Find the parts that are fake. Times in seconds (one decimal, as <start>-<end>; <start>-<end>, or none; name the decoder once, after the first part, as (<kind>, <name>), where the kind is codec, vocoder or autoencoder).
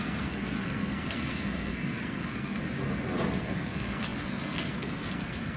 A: 0.0-2.6 (codec, SNAC); 3.4-5.6